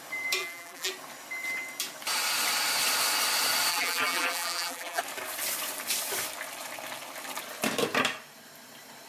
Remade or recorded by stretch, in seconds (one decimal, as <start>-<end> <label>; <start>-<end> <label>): 0.0-0.4 recorded; 0.4-0.9 remade; 0.9-3.7 recorded; 3.7-5.0 remade; 5.0-9.1 recorded